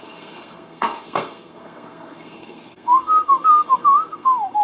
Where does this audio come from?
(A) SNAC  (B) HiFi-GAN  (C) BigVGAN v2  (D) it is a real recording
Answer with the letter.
A